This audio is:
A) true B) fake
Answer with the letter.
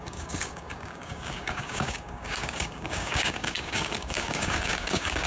B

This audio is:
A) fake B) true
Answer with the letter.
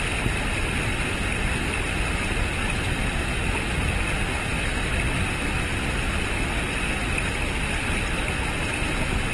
B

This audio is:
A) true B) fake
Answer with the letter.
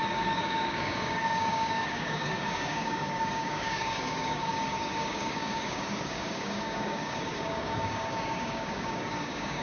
B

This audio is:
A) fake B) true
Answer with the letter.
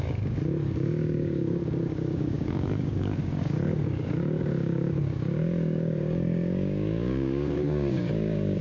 A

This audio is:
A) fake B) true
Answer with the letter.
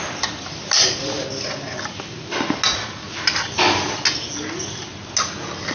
B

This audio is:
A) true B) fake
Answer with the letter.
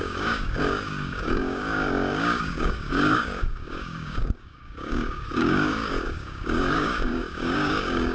B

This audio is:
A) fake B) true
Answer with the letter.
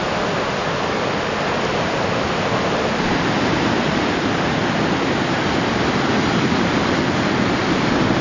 B